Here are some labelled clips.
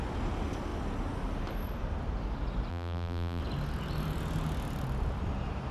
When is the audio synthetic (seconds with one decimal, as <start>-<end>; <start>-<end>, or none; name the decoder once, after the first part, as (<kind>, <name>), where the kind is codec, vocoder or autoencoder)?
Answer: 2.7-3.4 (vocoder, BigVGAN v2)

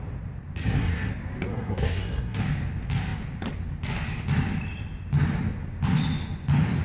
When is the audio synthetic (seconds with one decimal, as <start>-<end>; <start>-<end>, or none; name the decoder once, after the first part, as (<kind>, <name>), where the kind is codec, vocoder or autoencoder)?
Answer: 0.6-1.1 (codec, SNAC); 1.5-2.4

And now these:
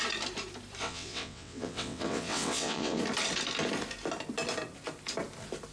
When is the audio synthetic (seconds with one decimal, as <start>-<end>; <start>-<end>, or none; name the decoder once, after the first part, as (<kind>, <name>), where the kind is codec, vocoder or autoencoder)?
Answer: 0.8-3.0 (vocoder, WaveNeXt)

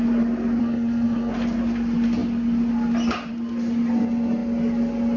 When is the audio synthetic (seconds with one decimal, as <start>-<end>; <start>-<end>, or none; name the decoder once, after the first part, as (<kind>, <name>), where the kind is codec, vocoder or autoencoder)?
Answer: 0.6-1.3 (codec, SNAC)

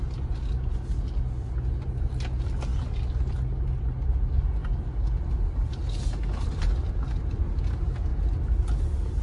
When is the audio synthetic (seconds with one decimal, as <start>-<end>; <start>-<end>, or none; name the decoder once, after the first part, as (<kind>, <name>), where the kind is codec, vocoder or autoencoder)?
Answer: none